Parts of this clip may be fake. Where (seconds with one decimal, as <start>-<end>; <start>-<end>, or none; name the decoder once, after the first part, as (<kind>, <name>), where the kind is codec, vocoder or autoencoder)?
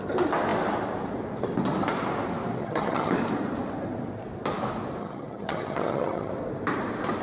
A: 2.6-3.1 (vocoder, HiFi-GAN); 5.0-6.3